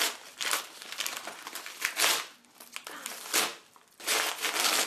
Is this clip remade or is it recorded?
recorded